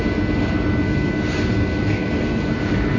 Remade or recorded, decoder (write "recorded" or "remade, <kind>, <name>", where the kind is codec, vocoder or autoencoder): recorded